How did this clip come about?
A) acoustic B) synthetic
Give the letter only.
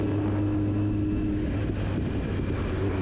A